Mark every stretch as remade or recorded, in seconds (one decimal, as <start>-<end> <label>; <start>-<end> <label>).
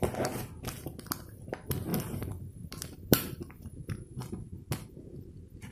0.0-1.9 recorded; 1.9-5.3 remade; 5.3-5.7 recorded